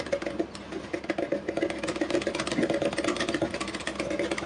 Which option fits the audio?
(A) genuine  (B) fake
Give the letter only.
A